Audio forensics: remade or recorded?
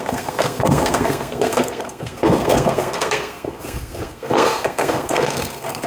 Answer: remade